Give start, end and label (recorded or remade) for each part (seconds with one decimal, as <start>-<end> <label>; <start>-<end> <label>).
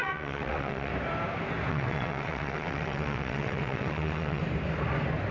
0.0-0.9 remade; 0.9-1.7 recorded; 1.7-4.4 remade; 4.4-5.3 recorded